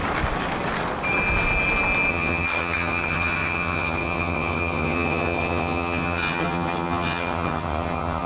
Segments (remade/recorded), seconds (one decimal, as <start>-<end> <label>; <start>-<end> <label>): 0.0-2.1 recorded; 2.1-8.3 remade